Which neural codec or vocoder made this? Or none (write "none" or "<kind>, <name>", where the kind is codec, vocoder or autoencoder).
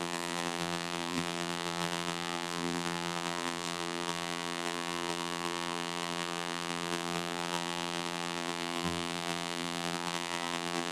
vocoder, BigVGAN v2